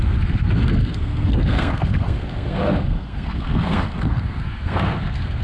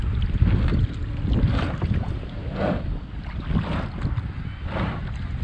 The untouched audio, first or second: second